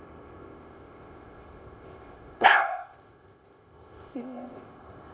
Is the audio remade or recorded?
remade